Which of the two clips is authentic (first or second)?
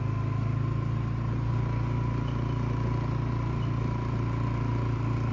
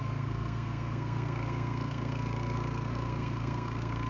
first